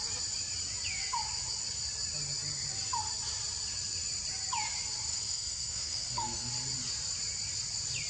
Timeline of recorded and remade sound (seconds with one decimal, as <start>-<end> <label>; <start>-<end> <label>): 0.0-5.1 recorded; 5.1-6.5 remade; 6.5-8.1 recorded